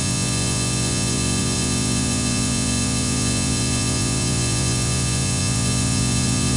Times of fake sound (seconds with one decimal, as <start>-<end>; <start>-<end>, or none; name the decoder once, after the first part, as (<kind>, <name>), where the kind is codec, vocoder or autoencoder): 0.0-6.6 (vocoder, Vocos)